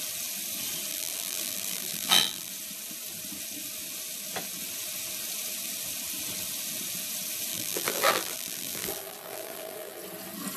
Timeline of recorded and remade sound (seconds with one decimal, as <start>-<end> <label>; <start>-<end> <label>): 0.0-0.9 recorded; 0.9-2.5 remade; 2.5-7.5 recorded; 7.5-10.0 remade; 10.0-10.6 recorded